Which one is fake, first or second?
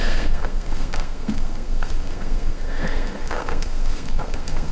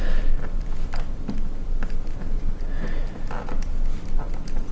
first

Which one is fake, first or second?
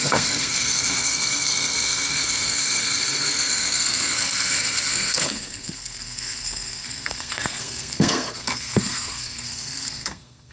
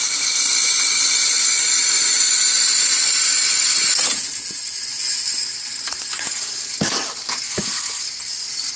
first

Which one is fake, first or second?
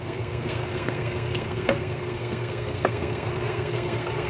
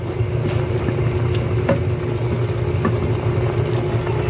first